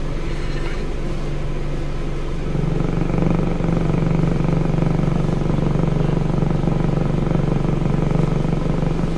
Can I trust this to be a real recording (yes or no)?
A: yes